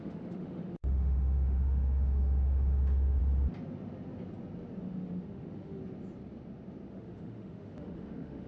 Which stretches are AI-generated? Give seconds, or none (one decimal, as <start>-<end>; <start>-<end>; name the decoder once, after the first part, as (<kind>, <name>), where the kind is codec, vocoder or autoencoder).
0.0-3.2 (autoencoder, DAC-VAE); 4.8-5.8; 6.9-8.5